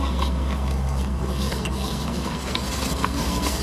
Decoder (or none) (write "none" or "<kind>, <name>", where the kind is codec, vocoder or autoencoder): codec, SNAC